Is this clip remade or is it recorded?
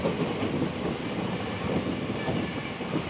recorded